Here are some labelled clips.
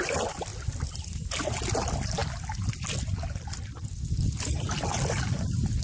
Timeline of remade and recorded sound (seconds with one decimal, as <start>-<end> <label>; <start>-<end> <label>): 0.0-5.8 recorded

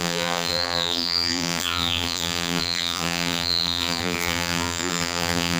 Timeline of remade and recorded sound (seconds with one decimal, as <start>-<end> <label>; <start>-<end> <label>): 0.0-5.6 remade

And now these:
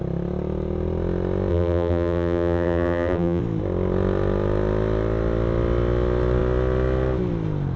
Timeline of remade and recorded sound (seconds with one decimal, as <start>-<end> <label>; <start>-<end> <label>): 0.0-1.5 recorded; 1.5-3.4 remade; 3.4-7.8 recorded

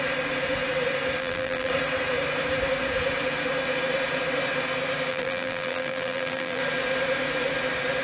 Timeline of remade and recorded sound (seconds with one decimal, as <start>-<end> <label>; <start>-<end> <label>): 0.0-1.2 recorded; 1.2-1.7 remade; 1.7-5.1 recorded; 5.1-6.6 remade; 6.6-8.0 recorded